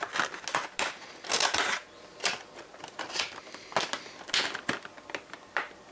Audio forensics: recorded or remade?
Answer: recorded